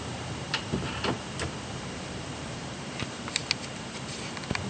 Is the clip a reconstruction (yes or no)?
yes